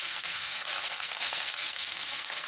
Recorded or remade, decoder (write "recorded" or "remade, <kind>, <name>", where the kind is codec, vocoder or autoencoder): remade, codec, SNAC